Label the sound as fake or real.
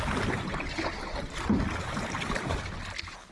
real